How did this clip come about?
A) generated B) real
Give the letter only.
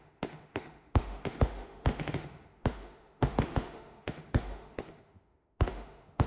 A